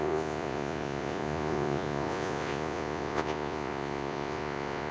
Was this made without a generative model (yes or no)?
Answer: no